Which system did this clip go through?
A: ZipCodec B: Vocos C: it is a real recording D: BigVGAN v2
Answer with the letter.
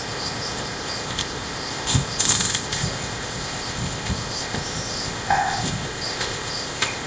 A